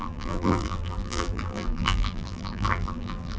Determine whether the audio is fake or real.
fake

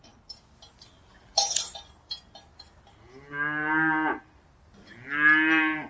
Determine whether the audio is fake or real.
real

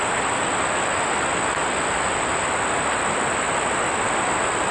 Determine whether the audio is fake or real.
real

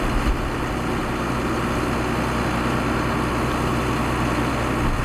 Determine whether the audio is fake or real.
real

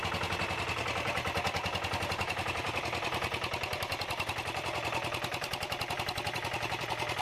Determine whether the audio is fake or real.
fake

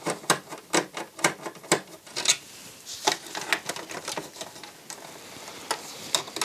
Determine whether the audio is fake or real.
real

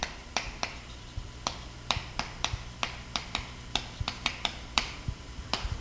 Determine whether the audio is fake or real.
fake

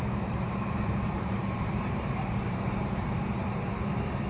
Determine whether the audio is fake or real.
fake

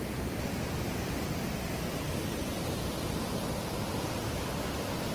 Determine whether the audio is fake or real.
real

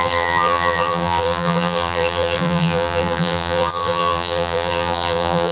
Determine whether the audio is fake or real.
fake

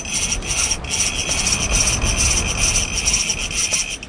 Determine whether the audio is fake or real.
real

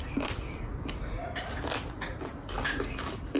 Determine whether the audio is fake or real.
fake